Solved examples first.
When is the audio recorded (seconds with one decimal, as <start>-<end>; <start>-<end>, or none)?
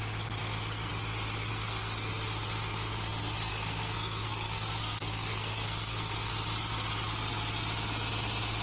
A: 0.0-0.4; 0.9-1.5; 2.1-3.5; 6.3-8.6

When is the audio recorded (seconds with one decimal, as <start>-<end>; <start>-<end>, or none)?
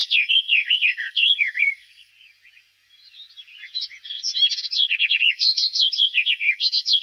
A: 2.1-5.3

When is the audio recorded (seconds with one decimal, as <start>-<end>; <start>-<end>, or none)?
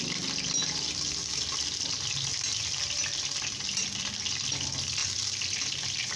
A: 0.0-6.2